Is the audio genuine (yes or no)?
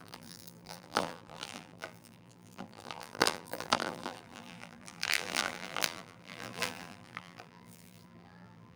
no